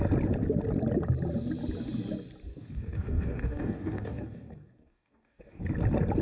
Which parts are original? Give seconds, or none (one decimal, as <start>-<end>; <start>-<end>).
0.0-2.5; 5.6-6.2